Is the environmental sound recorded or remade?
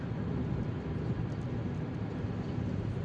recorded